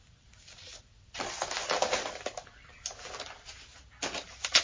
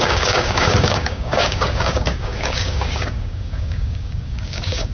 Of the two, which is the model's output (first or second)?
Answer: second